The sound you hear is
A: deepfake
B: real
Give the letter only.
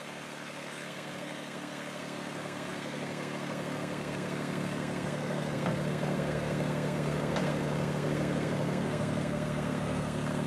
A